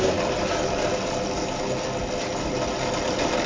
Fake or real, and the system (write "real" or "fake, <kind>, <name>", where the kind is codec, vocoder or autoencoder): real